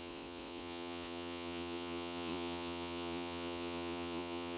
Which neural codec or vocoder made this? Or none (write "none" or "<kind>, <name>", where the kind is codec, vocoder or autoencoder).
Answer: vocoder, Vocos